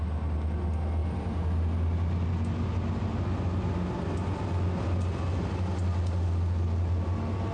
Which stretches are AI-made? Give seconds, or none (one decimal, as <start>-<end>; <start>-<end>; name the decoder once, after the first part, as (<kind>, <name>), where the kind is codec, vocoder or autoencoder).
none